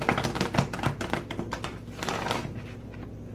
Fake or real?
real